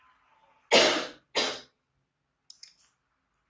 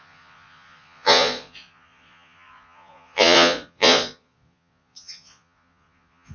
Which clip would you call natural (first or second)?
first